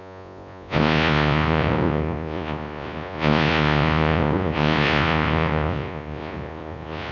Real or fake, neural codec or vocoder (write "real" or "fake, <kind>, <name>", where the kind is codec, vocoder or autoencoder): fake, vocoder, Vocos